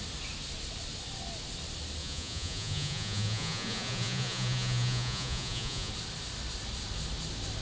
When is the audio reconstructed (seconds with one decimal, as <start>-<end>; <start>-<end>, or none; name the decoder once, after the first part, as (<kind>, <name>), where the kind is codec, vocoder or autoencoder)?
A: 2.0-5.9 (vocoder, Vocos)